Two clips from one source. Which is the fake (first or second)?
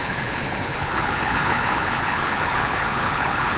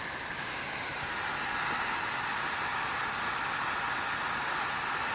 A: first